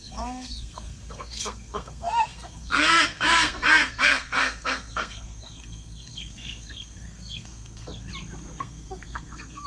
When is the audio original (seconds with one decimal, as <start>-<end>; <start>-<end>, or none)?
8.1-8.6